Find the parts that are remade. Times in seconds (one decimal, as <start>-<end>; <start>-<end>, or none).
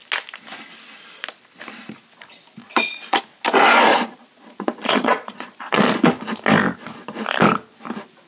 2.6-3.2; 3.9-5.8